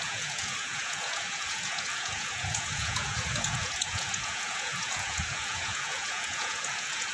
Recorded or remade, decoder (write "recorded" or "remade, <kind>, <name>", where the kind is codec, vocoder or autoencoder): remade, vocoder, Vocos